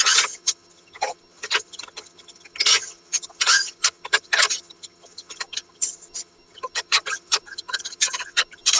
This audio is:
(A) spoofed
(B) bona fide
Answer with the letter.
A